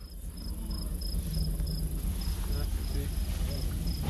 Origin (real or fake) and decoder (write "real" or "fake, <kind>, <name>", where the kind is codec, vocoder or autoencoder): real